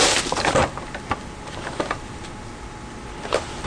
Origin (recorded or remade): recorded